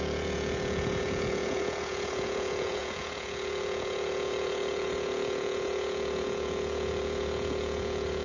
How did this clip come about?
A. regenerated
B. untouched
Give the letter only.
A